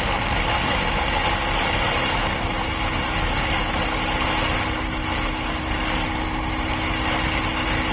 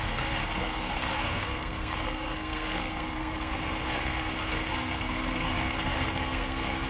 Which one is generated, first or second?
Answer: second